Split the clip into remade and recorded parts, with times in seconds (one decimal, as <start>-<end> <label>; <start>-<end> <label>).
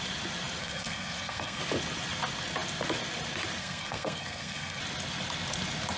0.0-0.6 recorded; 0.6-1.6 remade; 1.6-3.6 recorded; 3.6-4.8 remade; 4.8-6.0 recorded